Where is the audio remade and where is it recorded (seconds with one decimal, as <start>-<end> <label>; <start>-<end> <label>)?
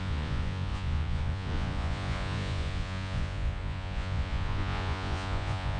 0.0-5.8 remade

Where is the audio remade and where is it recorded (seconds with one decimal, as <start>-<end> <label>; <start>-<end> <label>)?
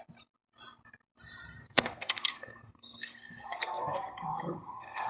0.0-1.6 recorded; 1.6-5.1 remade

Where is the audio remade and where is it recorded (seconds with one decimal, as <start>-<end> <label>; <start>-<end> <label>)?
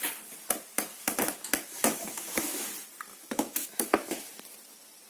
0.0-0.9 recorded; 0.9-2.7 remade; 2.7-3.1 recorded; 3.1-4.3 remade; 4.3-5.1 recorded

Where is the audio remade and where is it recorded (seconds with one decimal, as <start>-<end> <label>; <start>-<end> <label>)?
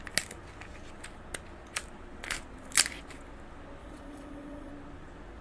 0.0-3.8 recorded; 3.8-4.7 remade; 4.7-5.4 recorded